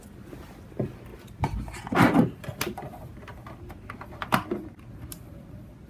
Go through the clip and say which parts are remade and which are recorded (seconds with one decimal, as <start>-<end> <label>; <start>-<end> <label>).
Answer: 0.0-5.9 recorded